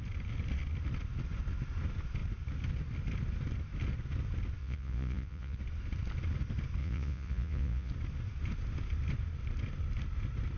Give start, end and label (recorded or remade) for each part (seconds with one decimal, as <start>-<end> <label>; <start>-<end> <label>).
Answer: 0.0-4.6 recorded; 4.6-5.6 remade; 5.6-6.8 recorded; 6.8-7.9 remade; 7.9-10.6 recorded